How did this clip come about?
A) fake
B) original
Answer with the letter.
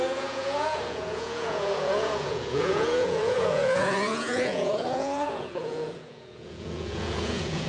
A